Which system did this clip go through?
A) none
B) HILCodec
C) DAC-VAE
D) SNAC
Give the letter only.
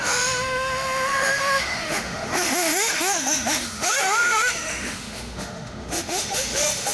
C